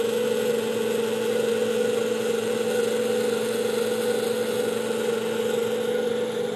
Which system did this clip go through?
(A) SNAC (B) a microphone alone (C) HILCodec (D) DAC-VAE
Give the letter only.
B